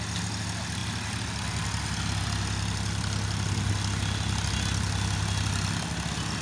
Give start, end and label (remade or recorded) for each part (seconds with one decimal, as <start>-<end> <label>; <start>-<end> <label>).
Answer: 0.0-6.4 recorded